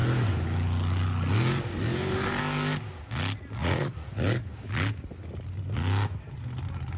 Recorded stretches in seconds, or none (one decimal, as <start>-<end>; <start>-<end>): 0.0-3.6; 4.1-7.0